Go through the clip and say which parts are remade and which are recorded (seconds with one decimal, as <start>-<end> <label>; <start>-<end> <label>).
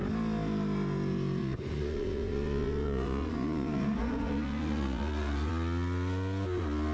0.0-1.4 recorded; 1.4-5.5 remade; 5.5-6.9 recorded